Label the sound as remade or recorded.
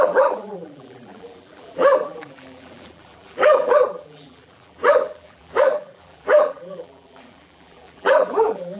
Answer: remade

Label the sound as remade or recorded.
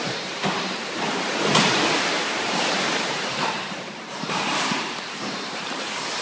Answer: remade